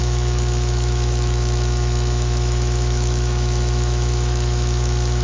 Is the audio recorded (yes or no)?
no